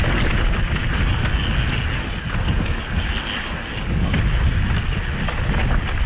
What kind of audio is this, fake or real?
real